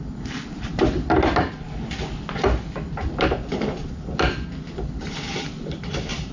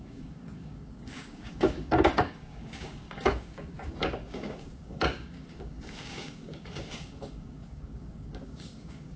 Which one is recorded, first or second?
first